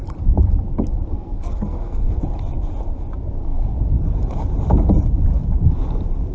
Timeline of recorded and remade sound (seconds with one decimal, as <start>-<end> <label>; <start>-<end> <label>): 0.0-1.1 recorded; 1.1-2.2 remade; 2.2-6.3 recorded